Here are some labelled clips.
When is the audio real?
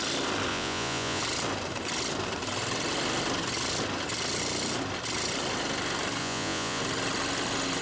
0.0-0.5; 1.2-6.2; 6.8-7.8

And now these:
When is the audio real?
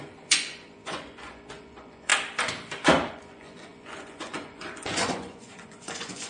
2.1-3.1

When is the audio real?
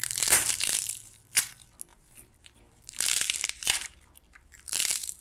1.3-1.9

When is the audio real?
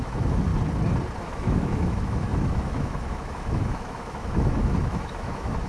0.5-1.2